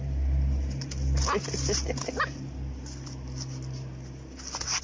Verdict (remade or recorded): recorded